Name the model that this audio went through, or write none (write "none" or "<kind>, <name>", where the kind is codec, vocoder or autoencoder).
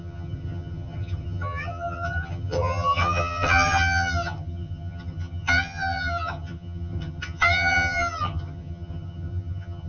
vocoder, HiFi-GAN